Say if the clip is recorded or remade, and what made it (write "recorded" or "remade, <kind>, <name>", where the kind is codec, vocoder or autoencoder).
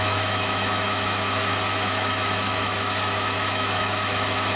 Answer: remade, autoencoder, DAC-VAE